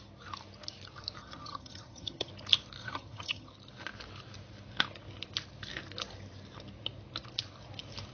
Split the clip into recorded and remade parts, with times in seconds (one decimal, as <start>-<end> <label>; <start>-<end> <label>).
0.0-1.2 recorded; 1.2-2.3 remade; 2.3-2.8 recorded; 2.8-3.5 remade; 3.5-8.1 recorded